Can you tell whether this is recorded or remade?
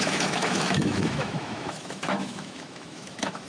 remade